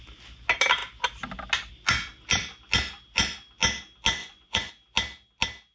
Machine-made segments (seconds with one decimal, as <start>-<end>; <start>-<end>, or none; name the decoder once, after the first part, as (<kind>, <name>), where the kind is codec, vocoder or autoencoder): 4.2-4.7 (vocoder, Vocos)